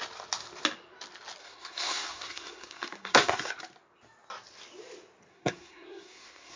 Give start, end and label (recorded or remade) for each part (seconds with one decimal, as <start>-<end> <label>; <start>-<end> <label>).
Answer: 0.0-1.4 recorded; 1.4-3.6 remade; 3.6-5.3 recorded; 5.3-6.6 remade